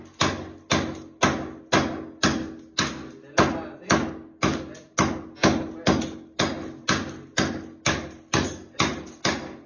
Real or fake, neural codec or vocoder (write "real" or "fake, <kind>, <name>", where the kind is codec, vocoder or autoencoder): real